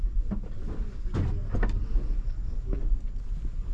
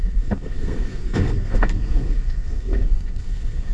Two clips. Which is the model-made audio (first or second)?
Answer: second